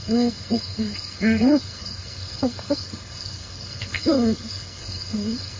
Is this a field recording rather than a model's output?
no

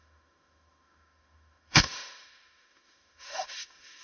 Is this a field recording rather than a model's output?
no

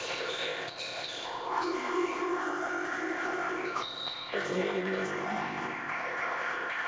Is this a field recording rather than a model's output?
no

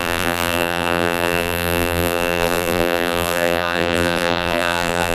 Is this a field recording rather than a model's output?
no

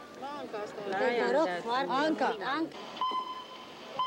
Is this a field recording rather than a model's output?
yes